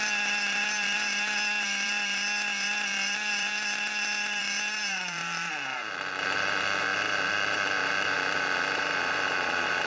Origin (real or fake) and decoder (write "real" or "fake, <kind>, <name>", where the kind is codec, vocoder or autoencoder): fake, vocoder, BigVGAN v2